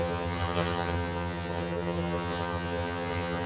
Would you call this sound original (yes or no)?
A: no